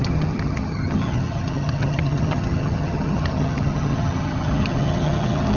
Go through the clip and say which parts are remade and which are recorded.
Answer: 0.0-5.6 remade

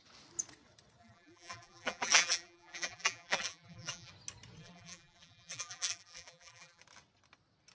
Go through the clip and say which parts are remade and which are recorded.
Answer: 0.0-1.0 recorded; 1.0-4.1 remade; 4.1-4.6 recorded; 4.6-6.8 remade; 6.8-7.7 recorded

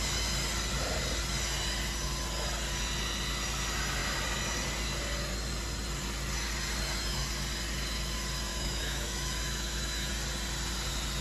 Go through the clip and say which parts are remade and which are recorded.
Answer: 0.0-8.5 recorded; 8.5-10.1 remade; 10.1-11.2 recorded

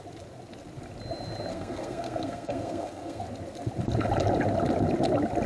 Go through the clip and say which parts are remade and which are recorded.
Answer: 0.0-1.5 recorded; 1.5-3.2 remade; 3.2-5.5 recorded

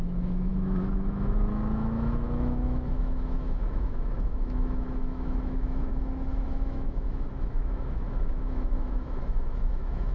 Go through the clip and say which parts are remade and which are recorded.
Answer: 0.0-10.1 remade